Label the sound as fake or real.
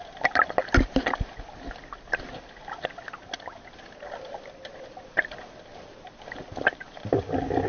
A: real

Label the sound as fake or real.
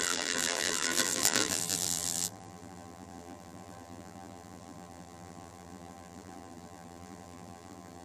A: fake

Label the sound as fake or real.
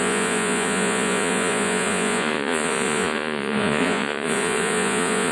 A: fake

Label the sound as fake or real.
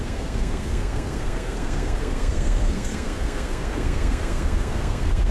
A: fake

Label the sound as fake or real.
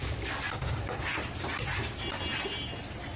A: real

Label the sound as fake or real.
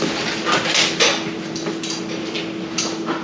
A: real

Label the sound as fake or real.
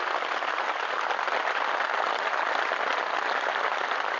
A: real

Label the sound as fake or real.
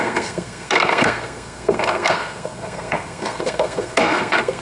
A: fake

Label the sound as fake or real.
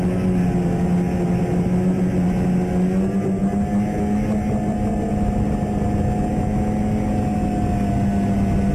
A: real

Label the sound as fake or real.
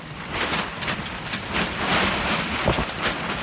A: real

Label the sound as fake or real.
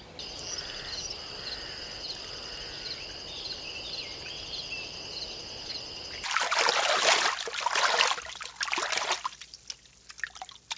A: real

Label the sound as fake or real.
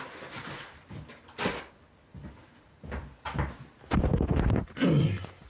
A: fake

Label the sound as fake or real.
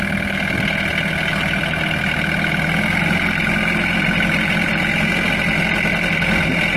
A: real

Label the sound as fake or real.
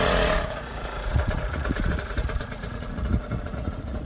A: fake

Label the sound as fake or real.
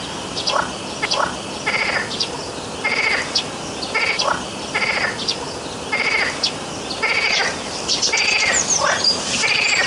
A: real